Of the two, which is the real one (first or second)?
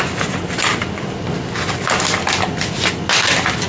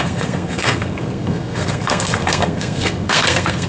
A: first